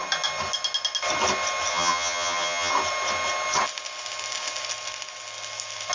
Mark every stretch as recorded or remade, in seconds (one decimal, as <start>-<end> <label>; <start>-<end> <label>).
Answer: 0.0-1.7 recorded; 1.7-2.7 remade; 2.7-5.9 recorded